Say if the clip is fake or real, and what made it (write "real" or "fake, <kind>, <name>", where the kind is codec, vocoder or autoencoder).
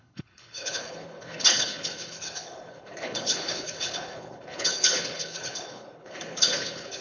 fake, codec, HILCodec